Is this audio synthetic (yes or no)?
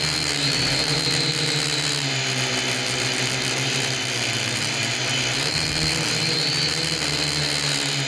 no